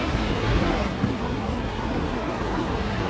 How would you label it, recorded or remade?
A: remade